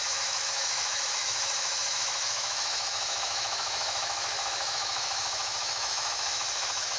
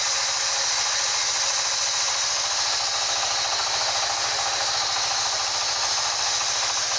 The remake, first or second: first